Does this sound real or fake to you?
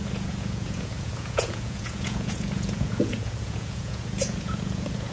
fake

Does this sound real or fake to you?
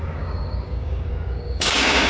fake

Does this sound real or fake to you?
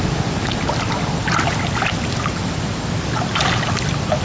real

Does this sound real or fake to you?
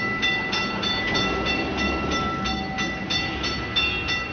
real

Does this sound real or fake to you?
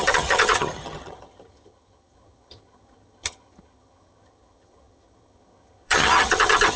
fake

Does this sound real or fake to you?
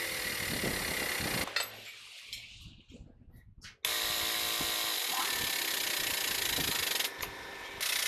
real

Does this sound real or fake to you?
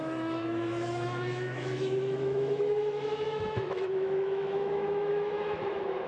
fake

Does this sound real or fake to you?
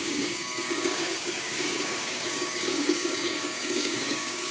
fake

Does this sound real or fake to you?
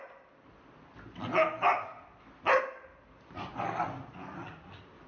real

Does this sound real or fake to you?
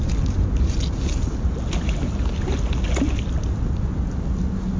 real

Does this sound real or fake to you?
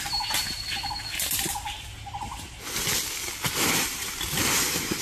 real